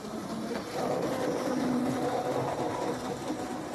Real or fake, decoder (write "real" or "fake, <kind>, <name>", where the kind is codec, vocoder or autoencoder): fake, vocoder, BigVGAN v2